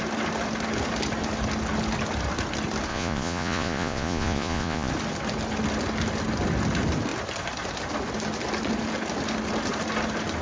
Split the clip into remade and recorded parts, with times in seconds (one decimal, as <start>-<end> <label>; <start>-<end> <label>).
0.0-2.9 recorded; 2.9-4.9 remade; 4.9-10.4 recorded